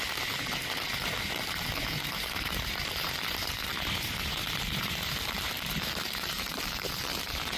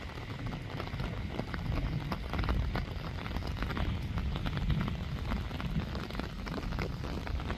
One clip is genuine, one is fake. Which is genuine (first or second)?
second